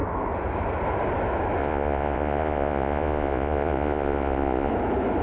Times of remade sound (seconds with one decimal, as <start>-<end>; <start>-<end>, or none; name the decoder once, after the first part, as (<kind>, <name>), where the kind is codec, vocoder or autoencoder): 1.6-4.7 (vocoder, Vocos)